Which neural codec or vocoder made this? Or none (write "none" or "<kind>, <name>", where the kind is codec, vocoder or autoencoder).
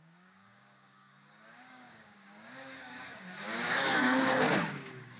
codec, DAC